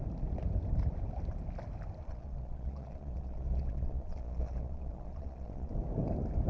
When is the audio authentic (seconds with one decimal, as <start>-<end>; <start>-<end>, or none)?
0.0-2.0; 5.7-6.5